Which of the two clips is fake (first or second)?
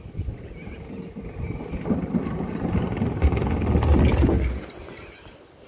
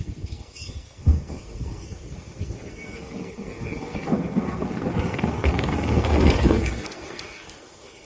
second